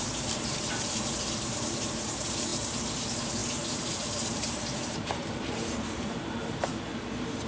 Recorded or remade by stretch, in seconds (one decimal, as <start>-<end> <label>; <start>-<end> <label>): 0.0-6.9 remade; 6.9-7.5 recorded

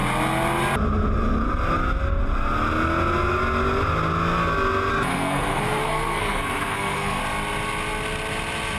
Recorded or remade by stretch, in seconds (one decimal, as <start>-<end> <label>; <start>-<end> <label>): 0.0-4.9 recorded; 4.9-7.2 remade; 7.2-8.8 recorded

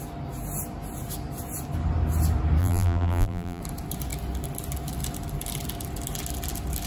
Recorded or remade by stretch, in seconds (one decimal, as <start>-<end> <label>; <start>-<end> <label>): 0.0-2.6 recorded; 2.6-3.6 remade; 3.6-6.9 recorded

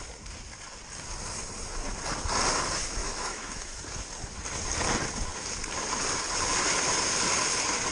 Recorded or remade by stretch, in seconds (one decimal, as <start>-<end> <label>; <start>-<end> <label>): 0.0-3.0 recorded; 3.0-3.8 remade; 3.8-7.9 recorded

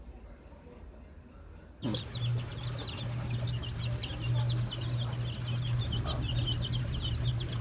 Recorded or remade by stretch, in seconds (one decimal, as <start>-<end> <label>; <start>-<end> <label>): 0.0-7.6 recorded

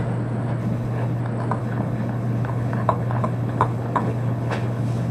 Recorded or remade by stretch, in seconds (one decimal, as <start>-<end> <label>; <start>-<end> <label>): 0.0-0.6 recorded; 0.6-1.2 remade; 1.2-1.6 recorded; 1.6-5.1 remade